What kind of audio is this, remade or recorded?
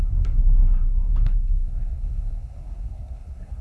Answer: remade